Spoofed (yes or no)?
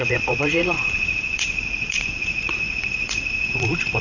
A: yes